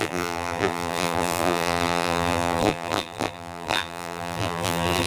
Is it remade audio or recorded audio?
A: remade